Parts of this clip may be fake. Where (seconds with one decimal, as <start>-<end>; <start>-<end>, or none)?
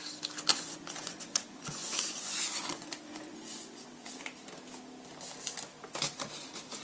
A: 0.5-4.1